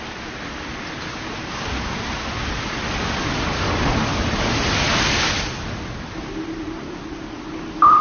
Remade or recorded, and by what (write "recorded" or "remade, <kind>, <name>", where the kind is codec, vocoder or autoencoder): recorded